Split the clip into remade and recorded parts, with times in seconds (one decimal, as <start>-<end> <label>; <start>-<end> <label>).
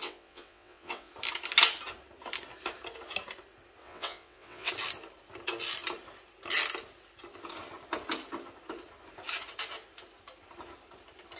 0.0-1.1 remade; 1.1-3.8 recorded; 3.8-4.7 remade; 4.7-11.4 recorded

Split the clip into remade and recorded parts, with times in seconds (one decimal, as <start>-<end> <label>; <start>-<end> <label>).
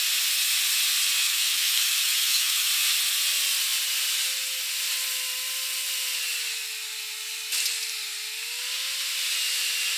0.0-1.2 recorded; 1.2-2.7 remade; 2.7-10.0 recorded